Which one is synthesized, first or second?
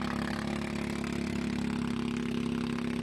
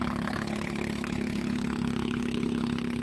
second